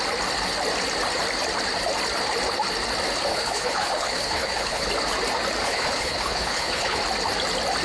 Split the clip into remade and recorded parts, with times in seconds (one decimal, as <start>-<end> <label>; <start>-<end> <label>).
0.0-3.3 recorded; 3.3-4.9 remade; 4.9-5.6 recorded; 5.6-7.0 remade; 7.0-7.8 recorded